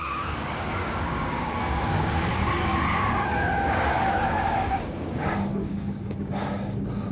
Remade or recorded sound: remade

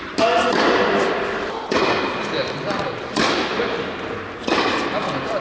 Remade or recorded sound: recorded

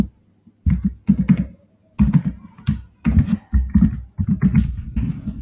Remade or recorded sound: recorded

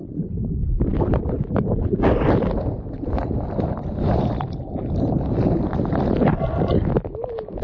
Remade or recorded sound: recorded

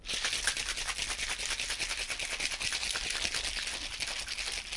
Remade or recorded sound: recorded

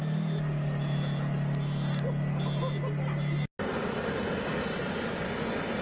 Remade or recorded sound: recorded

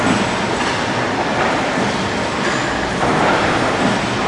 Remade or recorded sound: recorded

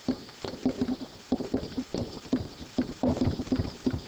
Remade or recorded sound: remade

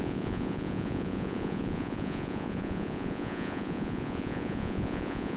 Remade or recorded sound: remade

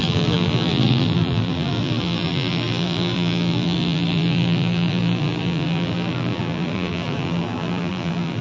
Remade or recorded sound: remade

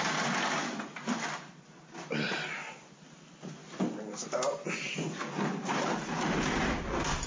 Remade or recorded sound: recorded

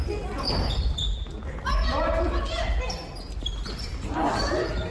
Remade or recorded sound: recorded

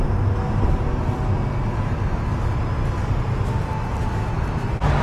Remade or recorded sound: recorded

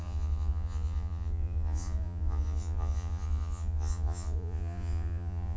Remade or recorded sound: remade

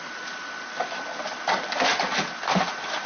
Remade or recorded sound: recorded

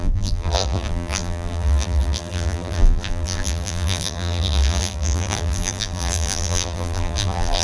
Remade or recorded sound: remade